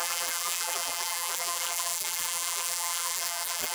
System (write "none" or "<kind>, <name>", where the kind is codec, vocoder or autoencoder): vocoder, BigVGAN v2